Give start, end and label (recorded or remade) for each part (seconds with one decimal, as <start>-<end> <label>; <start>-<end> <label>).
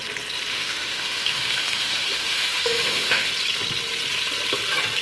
0.0-0.5 recorded; 0.5-3.3 remade; 3.3-5.0 recorded